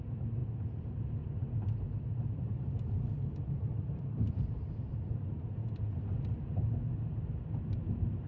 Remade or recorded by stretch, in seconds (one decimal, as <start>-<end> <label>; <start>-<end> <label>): 0.0-5.6 remade; 5.6-7.9 recorded; 7.9-8.3 remade